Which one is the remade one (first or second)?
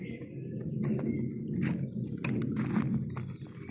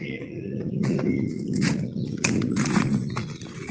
second